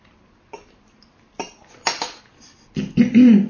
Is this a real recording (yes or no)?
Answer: yes